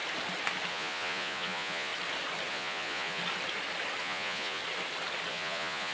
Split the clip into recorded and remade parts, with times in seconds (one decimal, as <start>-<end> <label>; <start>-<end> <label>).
0.0-0.7 recorded; 0.7-1.9 remade; 1.9-2.5 recorded; 2.5-3.2 remade; 3.2-4.0 recorded; 4.0-4.6 remade; 4.6-5.3 recorded; 5.3-5.9 remade